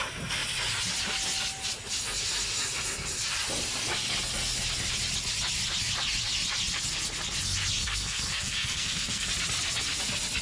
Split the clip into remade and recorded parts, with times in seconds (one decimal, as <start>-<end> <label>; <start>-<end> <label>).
0.0-7.8 recorded; 7.8-9.3 remade; 9.3-10.4 recorded